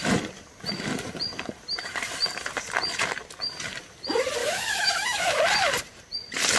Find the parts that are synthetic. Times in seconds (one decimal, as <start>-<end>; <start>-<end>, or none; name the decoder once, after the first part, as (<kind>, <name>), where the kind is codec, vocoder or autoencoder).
4.4-5.4 (autoencoder, DAC-VAE)